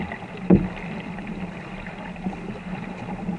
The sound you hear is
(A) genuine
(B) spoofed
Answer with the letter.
A